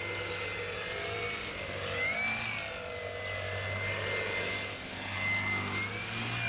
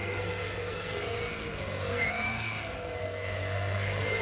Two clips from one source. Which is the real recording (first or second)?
first